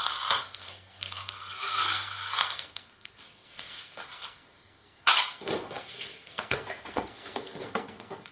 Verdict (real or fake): fake